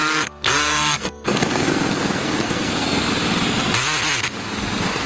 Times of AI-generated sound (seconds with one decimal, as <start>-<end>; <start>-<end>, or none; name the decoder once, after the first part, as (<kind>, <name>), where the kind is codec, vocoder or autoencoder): 0.0-3.1 (codec, SNAC)